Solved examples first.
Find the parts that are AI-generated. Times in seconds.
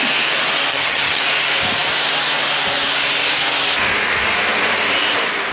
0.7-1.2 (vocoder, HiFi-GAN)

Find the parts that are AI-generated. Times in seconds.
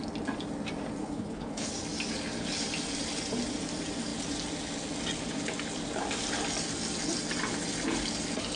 1.0-1.7 (codec, HILCodec)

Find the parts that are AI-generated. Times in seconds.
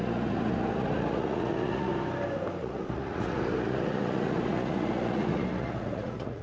0.0-1.9 (vocoder, Vocos); 2.6-6.4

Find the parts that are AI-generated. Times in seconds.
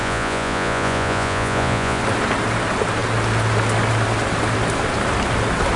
0.0-2.0 (vocoder, Vocos)